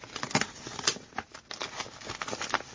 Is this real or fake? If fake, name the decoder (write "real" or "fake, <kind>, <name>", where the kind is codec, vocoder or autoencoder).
real